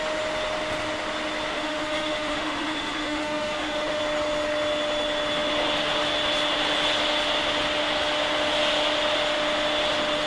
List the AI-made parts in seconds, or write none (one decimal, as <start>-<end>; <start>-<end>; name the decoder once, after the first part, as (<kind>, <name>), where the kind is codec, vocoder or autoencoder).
1.5-4.0 (autoencoder, DAC-VAE)